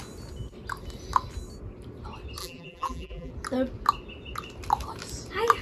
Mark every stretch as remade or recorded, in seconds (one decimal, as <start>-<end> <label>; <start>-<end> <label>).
0.0-2.4 recorded; 2.4-3.3 remade; 3.3-5.6 recorded